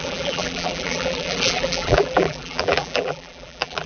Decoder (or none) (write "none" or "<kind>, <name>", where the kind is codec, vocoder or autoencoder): vocoder, BigVGAN v2